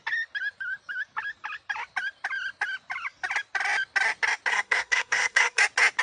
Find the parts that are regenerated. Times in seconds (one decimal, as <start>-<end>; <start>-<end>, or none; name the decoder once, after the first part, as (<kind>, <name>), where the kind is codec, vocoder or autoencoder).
4.5-5.6 (codec, SNAC)